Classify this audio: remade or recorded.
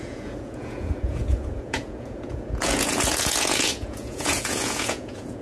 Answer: remade